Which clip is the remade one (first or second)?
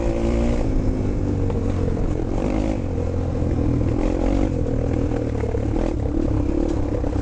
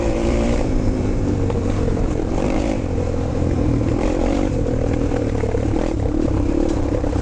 second